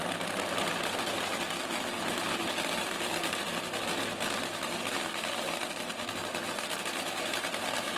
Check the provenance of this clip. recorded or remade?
recorded